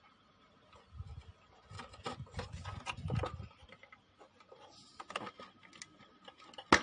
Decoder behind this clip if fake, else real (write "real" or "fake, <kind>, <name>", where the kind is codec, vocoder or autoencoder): real